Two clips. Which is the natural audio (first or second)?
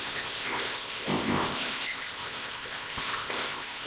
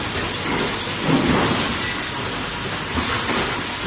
second